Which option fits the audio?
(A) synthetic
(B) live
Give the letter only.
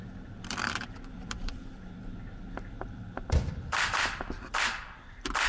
A